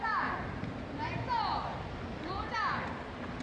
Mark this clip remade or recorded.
recorded